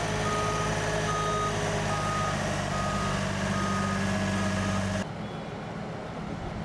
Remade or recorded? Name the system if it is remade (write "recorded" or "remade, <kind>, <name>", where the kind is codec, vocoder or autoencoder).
recorded